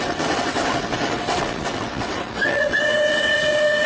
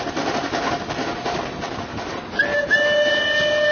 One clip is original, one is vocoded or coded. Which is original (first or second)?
second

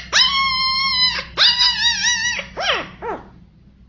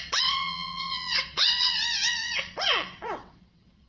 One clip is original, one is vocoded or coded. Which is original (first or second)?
first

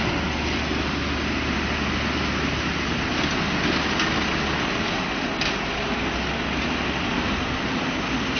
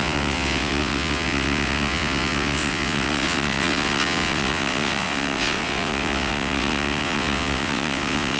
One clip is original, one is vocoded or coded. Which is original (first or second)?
first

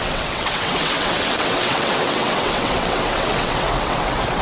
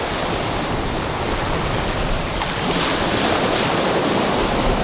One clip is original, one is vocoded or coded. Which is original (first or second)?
second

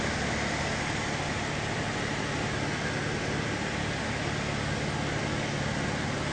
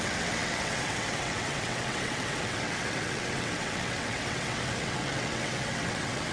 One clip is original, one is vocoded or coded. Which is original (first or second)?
first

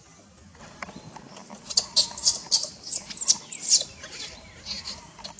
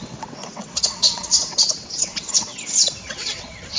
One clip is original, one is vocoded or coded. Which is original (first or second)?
first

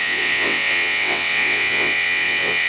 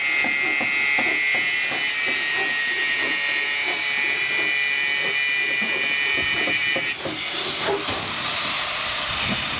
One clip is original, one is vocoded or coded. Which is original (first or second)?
second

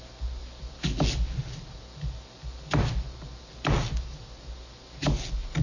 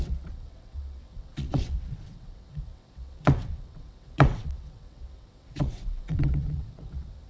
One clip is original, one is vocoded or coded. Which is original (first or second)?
first